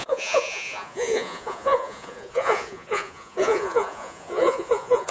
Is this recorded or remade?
remade